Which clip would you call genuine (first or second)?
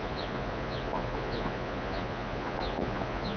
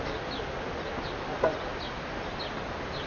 second